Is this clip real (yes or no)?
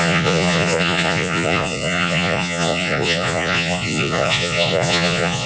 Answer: no